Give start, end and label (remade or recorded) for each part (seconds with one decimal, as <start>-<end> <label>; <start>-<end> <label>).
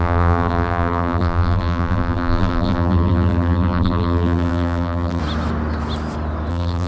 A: 0.0-5.2 remade; 5.2-6.5 recorded; 6.5-6.9 remade